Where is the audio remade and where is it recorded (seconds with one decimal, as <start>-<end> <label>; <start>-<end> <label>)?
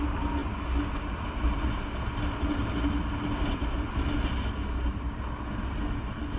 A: 0.0-6.4 recorded